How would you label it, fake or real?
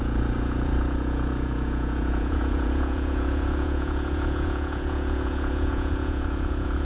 fake